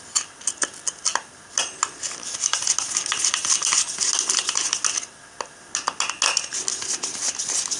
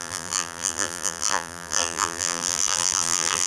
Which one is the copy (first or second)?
second